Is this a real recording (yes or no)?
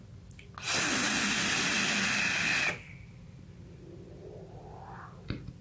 yes